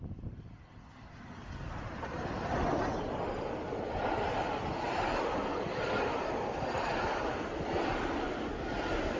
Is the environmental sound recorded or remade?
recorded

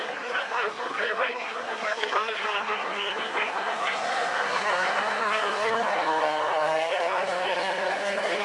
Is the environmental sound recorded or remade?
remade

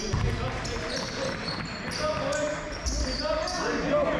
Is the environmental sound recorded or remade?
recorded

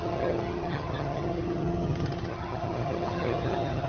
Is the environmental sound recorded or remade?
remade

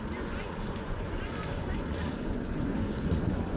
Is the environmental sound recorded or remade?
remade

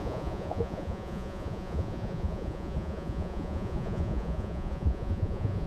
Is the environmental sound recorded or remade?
remade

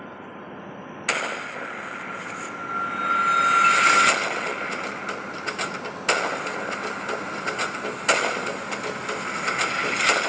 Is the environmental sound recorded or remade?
recorded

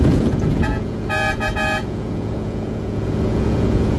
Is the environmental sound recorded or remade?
remade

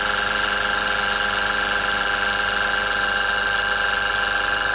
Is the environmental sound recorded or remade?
recorded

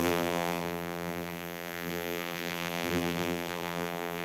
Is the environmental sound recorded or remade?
remade